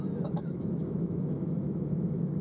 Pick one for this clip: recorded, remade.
remade